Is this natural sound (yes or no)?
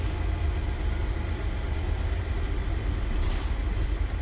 yes